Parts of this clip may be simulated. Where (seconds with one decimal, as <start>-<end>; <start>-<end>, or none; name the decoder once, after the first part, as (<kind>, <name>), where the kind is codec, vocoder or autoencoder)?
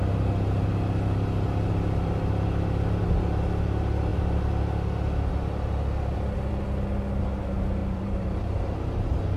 7.8-9.4 (vocoder, BigVGAN v2)